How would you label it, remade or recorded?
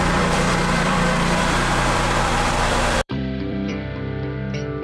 remade